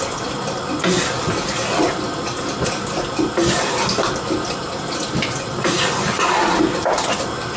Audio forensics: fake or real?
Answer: real